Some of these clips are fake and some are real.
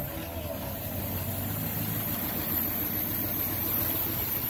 real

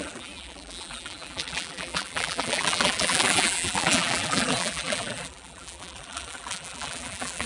fake